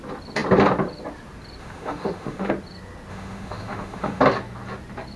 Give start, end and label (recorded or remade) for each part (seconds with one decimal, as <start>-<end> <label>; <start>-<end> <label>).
0.0-1.6 recorded; 1.6-2.5 remade; 2.5-3.1 recorded; 3.1-4.2 remade; 4.2-5.2 recorded